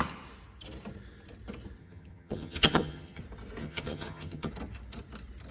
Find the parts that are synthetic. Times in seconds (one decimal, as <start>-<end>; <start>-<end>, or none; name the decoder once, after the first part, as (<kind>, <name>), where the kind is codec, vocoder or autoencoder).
1.8-3.2 (vocoder, HiFi-GAN); 3.6-4.5